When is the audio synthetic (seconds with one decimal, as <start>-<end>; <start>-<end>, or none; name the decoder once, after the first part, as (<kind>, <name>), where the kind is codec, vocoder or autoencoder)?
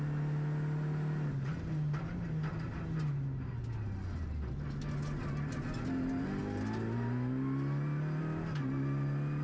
none